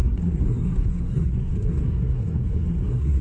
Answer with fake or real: fake